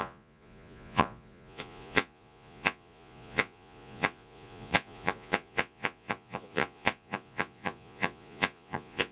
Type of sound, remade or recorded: remade